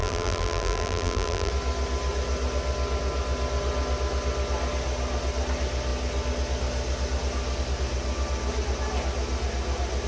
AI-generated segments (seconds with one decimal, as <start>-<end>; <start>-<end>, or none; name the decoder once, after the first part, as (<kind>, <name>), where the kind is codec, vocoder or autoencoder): 0.0-1.5 (vocoder, BigVGAN v2)